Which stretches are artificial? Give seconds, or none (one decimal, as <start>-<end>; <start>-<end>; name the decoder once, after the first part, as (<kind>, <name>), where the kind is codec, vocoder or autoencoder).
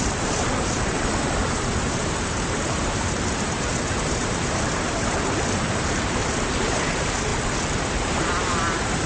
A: 0.0-7.3 (vocoder, BigVGAN v2); 7.9-9.1